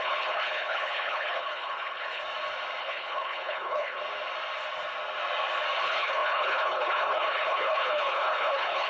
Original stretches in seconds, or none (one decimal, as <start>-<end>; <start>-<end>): 2.2-2.8; 4.0-5.8